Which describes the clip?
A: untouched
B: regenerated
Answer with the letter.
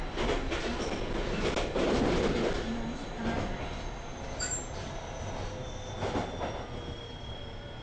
A